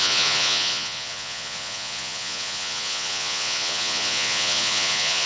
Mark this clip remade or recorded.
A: remade